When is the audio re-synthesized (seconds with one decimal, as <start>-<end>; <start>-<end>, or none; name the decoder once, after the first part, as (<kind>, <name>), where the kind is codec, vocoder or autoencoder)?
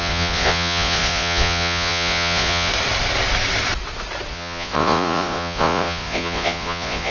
0.0-2.7 (vocoder, Vocos); 4.3-7.1